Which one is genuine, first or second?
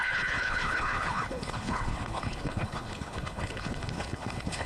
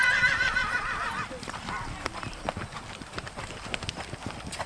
second